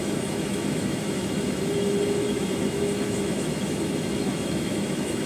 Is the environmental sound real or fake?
fake